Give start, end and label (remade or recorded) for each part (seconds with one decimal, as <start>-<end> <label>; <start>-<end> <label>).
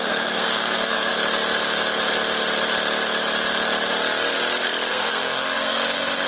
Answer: 0.0-1.1 remade; 1.1-4.9 recorded; 4.9-6.3 remade